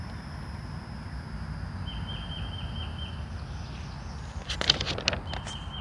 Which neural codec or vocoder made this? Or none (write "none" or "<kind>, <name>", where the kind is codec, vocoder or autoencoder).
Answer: none